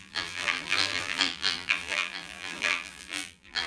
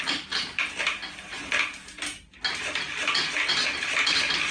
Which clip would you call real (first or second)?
second